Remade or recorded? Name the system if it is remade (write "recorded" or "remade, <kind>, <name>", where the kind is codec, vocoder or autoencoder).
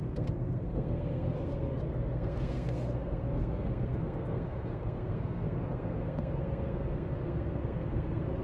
remade, codec, SNAC